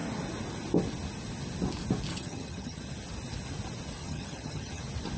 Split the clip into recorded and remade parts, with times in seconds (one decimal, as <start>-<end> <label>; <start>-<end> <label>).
0.0-2.1 recorded; 2.1-2.8 remade; 2.8-4.0 recorded; 4.0-4.8 remade; 4.8-5.2 recorded